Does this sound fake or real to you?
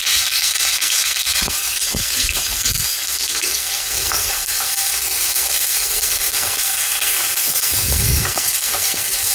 fake